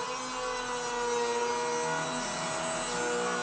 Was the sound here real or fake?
real